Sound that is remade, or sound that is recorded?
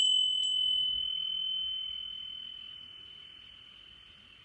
recorded